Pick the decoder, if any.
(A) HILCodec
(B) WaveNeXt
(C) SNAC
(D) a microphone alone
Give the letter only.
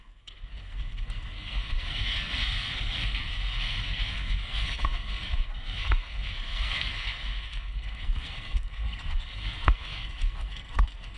C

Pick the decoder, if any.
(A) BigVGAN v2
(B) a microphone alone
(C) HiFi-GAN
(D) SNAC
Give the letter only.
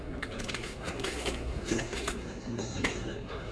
D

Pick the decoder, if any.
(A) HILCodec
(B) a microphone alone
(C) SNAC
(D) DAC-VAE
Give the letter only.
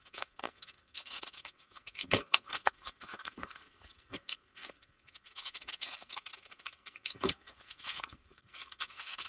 C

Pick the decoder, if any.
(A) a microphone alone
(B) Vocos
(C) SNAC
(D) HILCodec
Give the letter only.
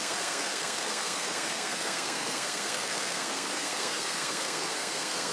C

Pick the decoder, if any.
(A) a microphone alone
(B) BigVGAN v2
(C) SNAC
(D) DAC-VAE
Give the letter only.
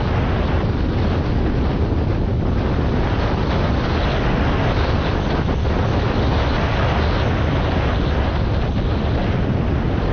A